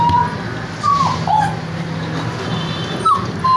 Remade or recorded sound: recorded